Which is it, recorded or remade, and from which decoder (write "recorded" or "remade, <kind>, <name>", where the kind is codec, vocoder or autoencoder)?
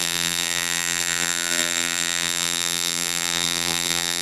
remade, vocoder, BigVGAN v2